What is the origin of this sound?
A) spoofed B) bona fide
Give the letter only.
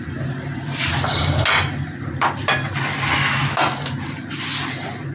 B